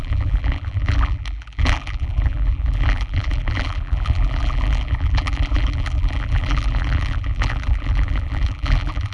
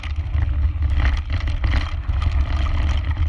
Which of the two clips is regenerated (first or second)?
first